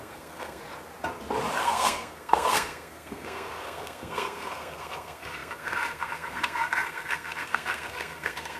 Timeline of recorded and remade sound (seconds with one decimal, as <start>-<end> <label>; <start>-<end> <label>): 0.0-0.6 remade; 0.6-1.6 recorded; 1.6-8.6 remade